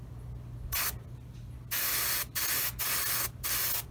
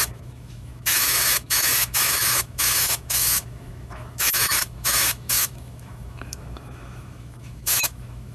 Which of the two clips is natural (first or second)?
first